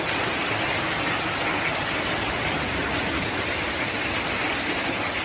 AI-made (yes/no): no